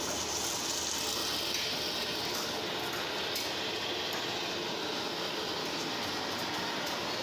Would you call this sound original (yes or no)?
yes